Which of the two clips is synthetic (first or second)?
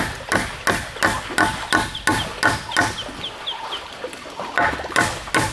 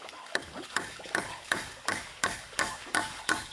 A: second